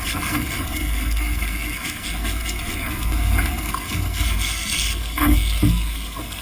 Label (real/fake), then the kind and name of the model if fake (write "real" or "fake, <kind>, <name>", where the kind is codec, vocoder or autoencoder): fake, codec, SNAC